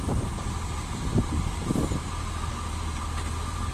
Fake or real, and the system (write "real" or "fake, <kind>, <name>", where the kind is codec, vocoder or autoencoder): fake, vocoder, BigVGAN v2